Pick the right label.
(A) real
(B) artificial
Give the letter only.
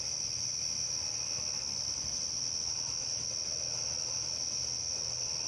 A